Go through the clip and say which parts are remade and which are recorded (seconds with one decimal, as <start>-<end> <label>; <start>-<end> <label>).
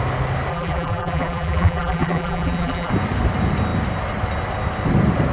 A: 0.0-0.5 recorded; 0.5-2.9 remade; 2.9-5.3 recorded